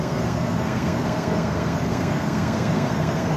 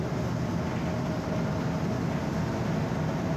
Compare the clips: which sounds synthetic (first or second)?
first